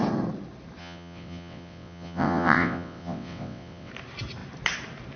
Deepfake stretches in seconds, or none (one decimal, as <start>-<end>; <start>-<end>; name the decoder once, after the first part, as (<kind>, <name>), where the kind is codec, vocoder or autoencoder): 0.8-3.9 (vocoder, WaveNeXt)